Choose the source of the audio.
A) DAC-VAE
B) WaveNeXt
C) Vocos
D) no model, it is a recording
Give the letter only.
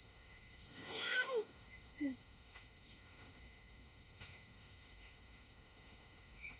A